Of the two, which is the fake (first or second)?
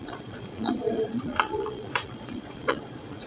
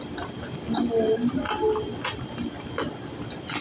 first